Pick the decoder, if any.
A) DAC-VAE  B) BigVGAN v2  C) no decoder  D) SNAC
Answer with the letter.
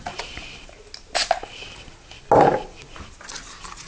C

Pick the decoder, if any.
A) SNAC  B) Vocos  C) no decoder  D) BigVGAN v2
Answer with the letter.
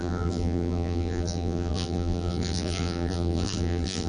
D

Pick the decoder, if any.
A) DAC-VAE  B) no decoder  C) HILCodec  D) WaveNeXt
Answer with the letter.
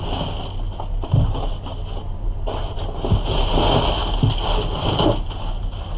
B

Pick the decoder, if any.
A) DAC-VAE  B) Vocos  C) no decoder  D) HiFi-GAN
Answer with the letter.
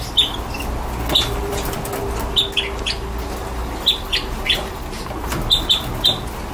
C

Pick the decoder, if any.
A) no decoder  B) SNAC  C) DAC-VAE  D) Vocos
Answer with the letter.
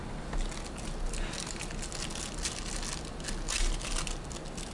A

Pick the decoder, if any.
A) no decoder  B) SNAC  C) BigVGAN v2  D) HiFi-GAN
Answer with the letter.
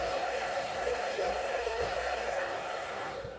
B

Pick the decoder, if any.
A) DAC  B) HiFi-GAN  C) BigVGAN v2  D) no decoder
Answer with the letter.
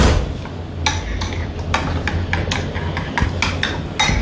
D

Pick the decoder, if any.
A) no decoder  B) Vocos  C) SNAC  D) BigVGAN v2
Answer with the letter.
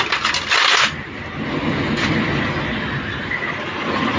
A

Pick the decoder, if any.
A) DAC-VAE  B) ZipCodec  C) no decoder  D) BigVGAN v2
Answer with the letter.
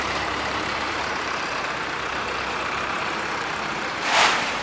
D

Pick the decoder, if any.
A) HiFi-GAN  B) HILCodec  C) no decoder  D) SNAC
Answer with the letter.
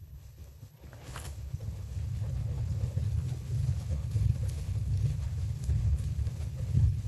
B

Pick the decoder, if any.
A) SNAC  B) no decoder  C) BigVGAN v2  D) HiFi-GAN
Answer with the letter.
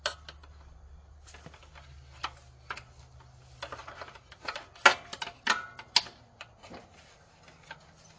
B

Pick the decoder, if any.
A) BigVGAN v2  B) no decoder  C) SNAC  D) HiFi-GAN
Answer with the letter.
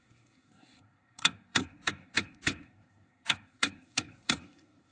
C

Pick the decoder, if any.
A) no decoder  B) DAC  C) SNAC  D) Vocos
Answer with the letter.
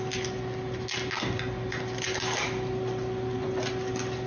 A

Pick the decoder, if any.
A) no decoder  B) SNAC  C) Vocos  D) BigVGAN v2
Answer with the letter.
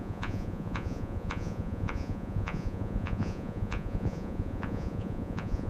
C